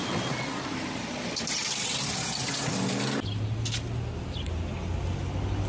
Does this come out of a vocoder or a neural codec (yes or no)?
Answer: no